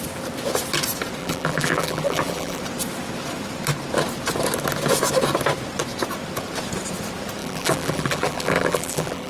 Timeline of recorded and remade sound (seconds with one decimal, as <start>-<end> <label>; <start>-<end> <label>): 0.0-1.2 recorded; 1.2-2.6 remade; 2.6-7.4 recorded; 7.4-9.3 remade

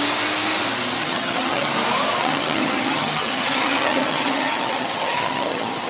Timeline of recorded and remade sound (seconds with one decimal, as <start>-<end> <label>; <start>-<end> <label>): 0.0-1.0 recorded; 1.0-1.7 remade; 1.7-2.2 recorded; 2.2-5.9 remade

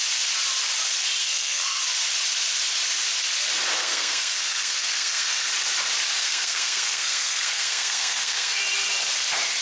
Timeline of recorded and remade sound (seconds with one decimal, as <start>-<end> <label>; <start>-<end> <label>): 0.0-1.2 recorded; 1.2-1.8 remade; 1.8-3.8 recorded; 3.8-5.5 remade; 5.5-6.2 recorded; 6.2-8.6 remade; 8.6-9.6 recorded

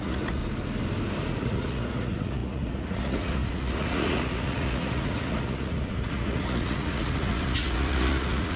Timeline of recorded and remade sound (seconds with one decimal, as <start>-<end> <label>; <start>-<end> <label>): 0.0-0.4 remade; 0.4-1.3 recorded; 1.3-8.6 remade

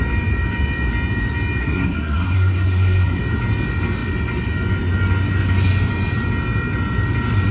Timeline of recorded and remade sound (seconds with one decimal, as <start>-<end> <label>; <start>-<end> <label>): 0.0-1.6 recorded; 1.6-3.2 remade; 3.2-7.5 recorded

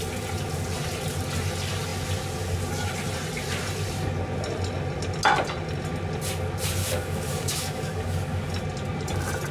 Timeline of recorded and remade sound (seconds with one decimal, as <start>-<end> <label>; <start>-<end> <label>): 0.0-6.8 recorded; 6.8-8.5 remade; 8.5-9.5 recorded